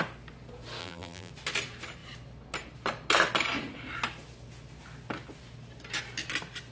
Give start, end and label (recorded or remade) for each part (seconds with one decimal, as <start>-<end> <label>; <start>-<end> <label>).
0.0-0.8 recorded; 0.8-1.3 remade; 1.3-6.7 recorded